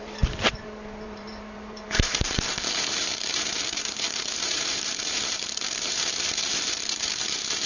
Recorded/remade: remade